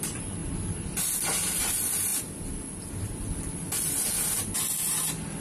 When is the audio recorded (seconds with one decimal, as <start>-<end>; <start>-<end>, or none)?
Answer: 0.0-5.4